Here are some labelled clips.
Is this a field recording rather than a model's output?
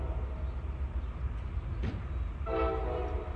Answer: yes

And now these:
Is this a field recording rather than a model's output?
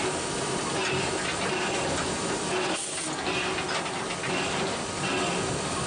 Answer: yes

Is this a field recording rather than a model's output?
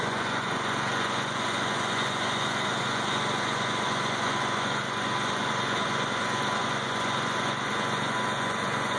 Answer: no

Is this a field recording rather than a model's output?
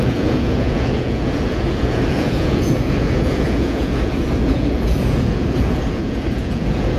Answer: no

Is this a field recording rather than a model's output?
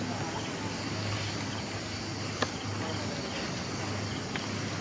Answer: yes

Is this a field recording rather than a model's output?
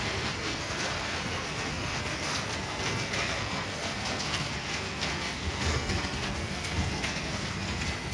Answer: no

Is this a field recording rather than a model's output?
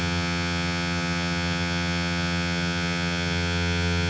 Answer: no